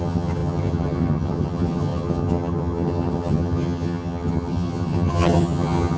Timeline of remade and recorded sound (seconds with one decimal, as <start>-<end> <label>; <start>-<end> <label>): 0.0-6.0 remade